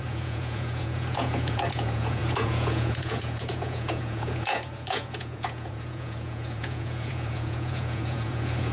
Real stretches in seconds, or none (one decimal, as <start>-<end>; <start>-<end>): none